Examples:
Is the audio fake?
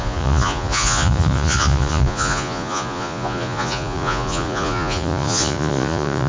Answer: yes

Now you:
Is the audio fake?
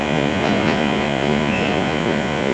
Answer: yes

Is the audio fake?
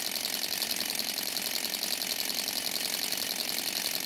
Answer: no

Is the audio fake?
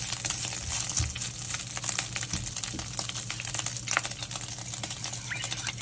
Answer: no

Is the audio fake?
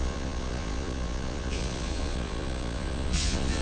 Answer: yes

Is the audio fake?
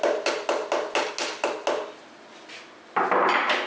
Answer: no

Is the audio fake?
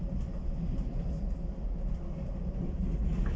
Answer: no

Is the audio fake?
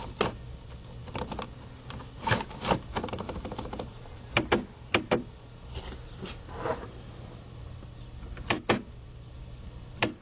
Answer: no